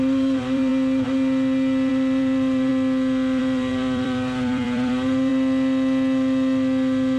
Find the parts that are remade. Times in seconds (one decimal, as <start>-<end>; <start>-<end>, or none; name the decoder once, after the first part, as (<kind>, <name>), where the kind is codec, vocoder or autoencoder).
0.0-0.7 (vocoder, BigVGAN v2); 1.9-2.7; 3.4-5.3